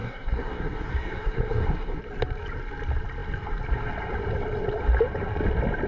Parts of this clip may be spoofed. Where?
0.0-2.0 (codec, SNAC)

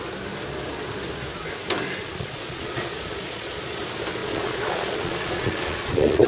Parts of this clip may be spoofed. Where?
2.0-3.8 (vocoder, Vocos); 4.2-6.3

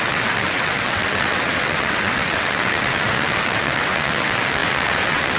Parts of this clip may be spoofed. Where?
0.0-5.4 (vocoder, WaveNeXt)

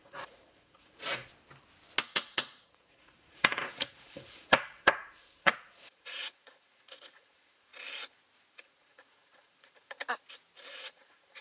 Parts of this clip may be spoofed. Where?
0.0-1.3 (vocoder, Vocos); 2.1-7.7; 8.5-10.0; 10.7-11.4

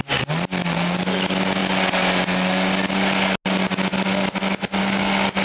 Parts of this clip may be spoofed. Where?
none

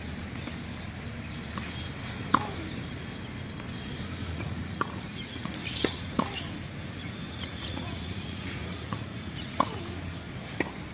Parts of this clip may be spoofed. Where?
4.2-6.4 (vocoder, Vocos); 7.0-9.8

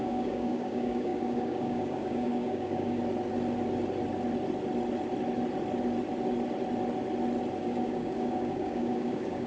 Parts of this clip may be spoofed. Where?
0.0-3.0 (codec, DAC); 7.6-9.5

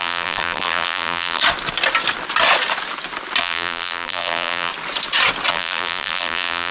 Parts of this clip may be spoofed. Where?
0.0-1.4 (vocoder, BigVGAN v2); 3.4-4.7; 5.5-6.7